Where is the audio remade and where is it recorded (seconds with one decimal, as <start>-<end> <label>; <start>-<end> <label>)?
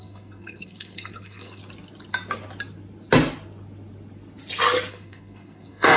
0.0-1.6 remade; 1.6-4.9 recorded; 4.9-6.0 remade